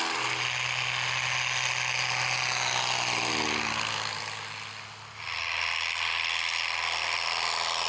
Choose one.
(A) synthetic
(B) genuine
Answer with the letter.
B